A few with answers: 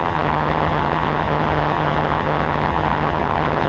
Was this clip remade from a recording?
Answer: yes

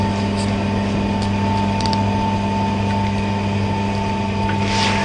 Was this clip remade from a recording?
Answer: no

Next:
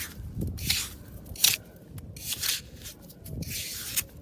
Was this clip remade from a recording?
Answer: no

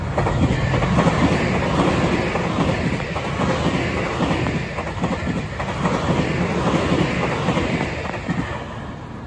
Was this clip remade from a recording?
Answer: no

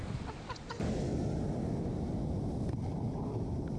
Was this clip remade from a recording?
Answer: no